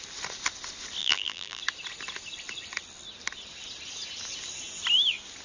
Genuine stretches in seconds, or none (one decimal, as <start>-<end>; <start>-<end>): 0.0-1.0; 1.6-5.4